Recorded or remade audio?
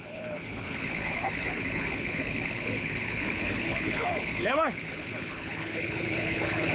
remade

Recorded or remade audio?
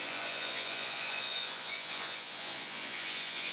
remade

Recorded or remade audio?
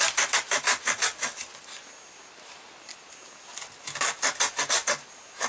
recorded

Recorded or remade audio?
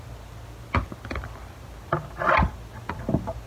recorded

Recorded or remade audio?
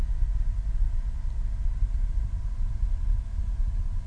recorded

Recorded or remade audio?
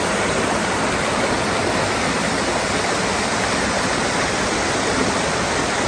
recorded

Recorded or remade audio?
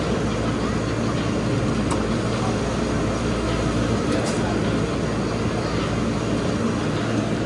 recorded